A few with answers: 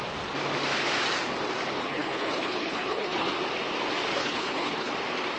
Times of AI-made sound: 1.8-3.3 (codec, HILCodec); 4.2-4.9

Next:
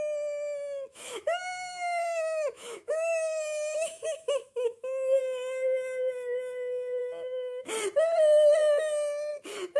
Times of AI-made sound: 0.9-5.2 (autoencoder, DAC-VAE); 7.0-7.7

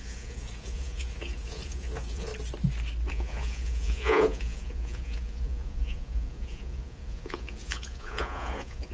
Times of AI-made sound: 0.0-2.3 (vocoder, Vocos); 3.1-8.9

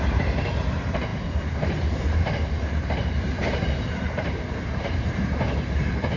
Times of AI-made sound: 0.0-6.2 (vocoder, BigVGAN v2)

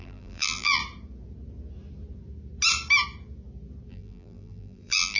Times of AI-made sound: 0.0-0.8 (vocoder, BigVGAN v2); 3.9-5.2